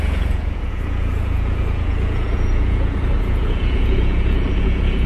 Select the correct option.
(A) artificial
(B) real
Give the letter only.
A